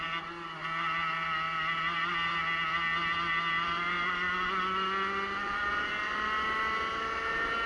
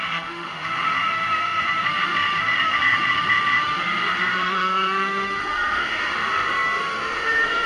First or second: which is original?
first